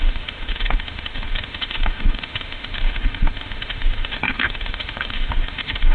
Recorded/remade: remade